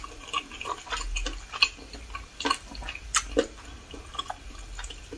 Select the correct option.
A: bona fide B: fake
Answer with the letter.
A